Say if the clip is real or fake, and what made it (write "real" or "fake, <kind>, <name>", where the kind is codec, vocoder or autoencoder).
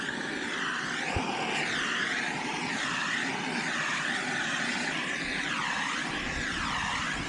real